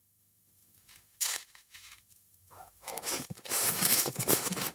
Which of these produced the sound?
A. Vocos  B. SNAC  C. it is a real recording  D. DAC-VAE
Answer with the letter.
D